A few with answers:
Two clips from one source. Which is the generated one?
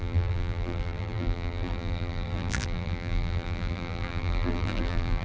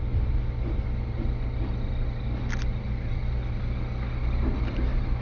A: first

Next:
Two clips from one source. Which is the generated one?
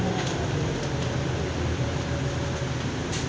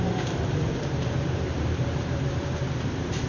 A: second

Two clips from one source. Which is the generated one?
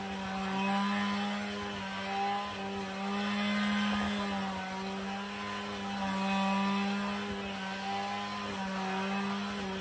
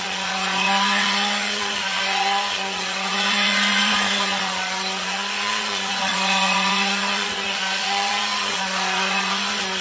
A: second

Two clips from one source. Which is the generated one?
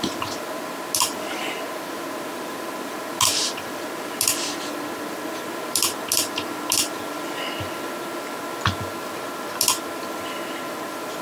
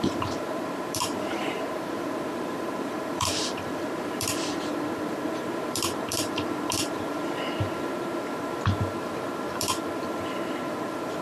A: second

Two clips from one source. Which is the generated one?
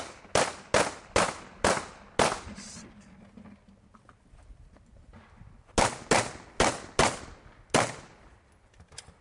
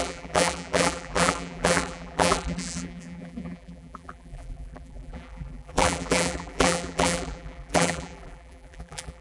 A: second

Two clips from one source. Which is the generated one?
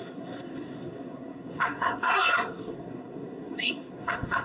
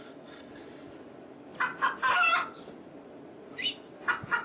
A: first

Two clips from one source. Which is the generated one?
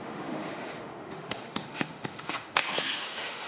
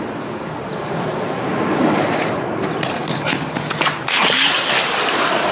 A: first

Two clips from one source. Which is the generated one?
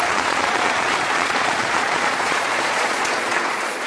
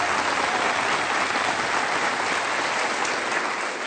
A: first